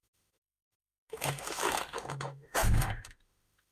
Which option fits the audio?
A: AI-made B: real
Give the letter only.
A